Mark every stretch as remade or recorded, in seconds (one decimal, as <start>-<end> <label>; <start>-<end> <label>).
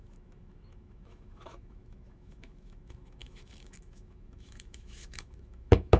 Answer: 0.0-6.0 remade